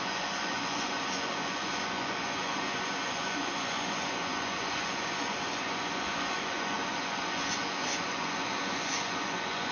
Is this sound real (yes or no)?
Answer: no